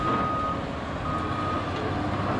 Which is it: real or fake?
real